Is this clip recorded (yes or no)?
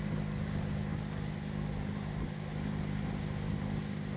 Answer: yes